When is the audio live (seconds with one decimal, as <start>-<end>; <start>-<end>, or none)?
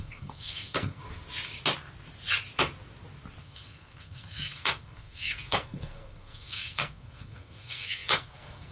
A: 1.0-3.4